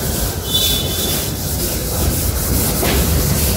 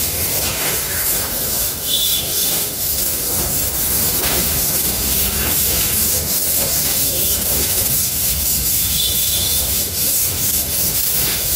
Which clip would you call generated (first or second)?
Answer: second